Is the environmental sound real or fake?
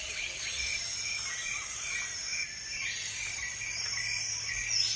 real